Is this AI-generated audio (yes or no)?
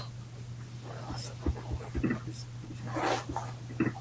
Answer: no